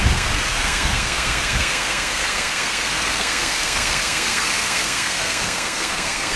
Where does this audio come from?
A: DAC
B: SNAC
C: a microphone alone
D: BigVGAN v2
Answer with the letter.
B